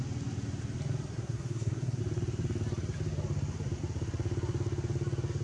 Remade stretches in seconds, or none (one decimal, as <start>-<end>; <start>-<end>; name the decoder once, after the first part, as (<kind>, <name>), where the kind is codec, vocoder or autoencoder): 1.1-2.0 (codec, SNAC)